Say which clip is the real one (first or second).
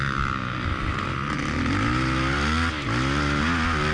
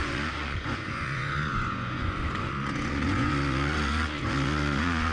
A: first